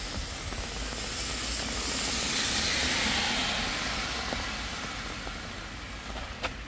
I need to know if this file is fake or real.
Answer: real